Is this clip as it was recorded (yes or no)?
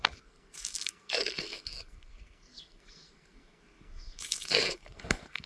no